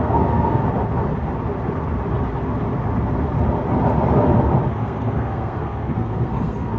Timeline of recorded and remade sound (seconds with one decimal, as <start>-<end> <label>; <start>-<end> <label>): 0.0-0.6 remade; 0.6-4.7 recorded; 4.7-6.8 remade

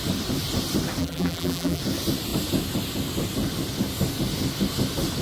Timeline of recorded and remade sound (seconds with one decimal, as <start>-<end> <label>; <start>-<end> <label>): 0.0-1.0 recorded; 1.0-1.8 remade; 1.8-5.2 recorded

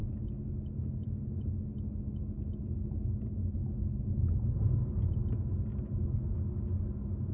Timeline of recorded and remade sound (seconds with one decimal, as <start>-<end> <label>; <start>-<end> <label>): 0.0-7.3 recorded

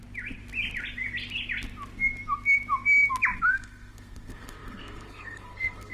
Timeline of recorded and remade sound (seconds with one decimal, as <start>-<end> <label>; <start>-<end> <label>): 0.0-3.5 recorded; 3.5-5.9 remade

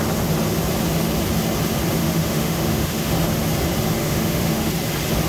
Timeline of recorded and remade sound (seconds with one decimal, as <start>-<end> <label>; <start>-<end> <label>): 0.0-2.0 recorded; 2.0-3.1 remade; 3.1-4.0 recorded; 4.0-4.7 remade; 4.7-5.3 recorded